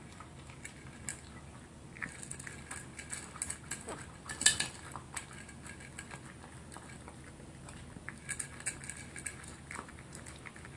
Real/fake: real